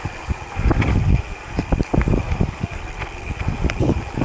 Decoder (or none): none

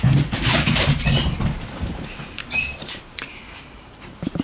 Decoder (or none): vocoder, BigVGAN v2